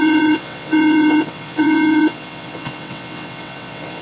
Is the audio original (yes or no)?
no